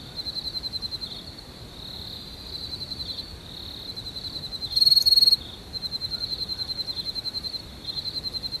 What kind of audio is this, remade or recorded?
recorded